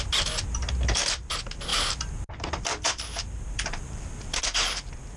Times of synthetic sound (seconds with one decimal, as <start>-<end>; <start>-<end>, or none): 1.7-4.4